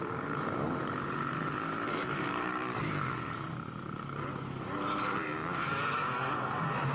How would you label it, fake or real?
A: fake